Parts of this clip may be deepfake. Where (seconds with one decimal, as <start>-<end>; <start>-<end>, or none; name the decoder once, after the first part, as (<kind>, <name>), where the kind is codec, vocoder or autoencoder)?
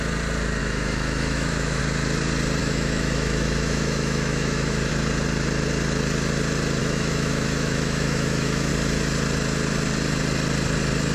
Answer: 0.6-1.8 (autoencoder, DAC-VAE); 2.6-4.9; 6.8-8.7